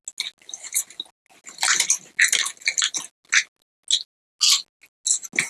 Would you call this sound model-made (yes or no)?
no